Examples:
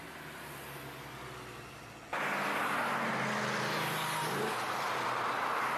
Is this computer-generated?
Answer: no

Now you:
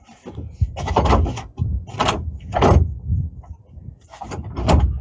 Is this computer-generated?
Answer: no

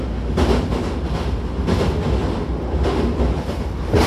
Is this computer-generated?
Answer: no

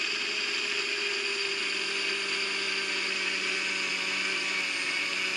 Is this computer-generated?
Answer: no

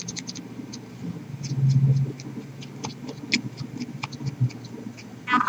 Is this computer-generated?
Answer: no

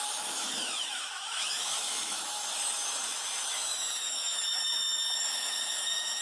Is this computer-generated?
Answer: yes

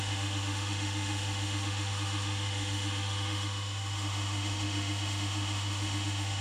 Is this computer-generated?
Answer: yes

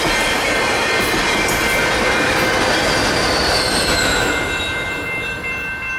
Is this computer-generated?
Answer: no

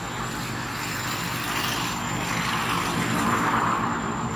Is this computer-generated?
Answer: no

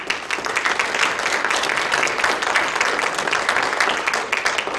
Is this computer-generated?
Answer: no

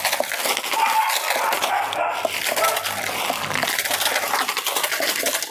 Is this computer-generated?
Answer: no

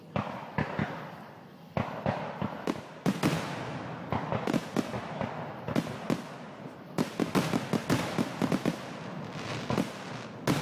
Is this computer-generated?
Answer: no